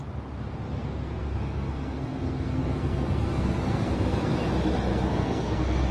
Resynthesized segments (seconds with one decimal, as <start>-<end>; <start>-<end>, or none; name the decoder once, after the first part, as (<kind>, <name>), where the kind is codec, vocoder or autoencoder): 0.8-4.3 (codec, SNAC); 4.9-5.9